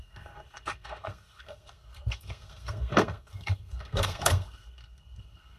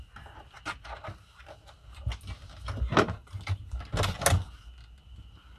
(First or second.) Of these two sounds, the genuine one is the second